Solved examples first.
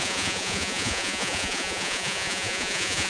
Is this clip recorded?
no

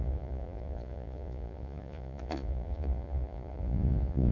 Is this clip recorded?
no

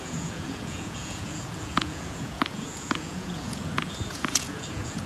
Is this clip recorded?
no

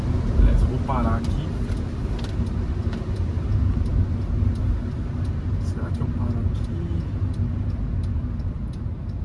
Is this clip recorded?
yes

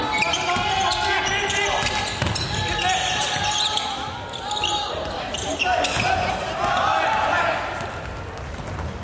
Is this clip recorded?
yes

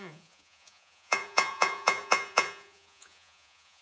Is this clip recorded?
no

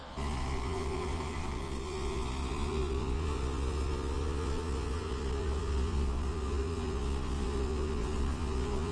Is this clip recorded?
no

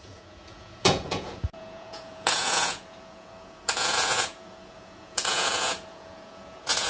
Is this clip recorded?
no